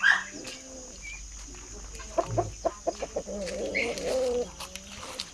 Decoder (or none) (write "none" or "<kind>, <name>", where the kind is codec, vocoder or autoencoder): none